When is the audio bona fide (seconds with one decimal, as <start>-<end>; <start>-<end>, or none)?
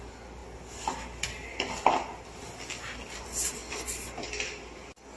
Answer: 0.0-5.2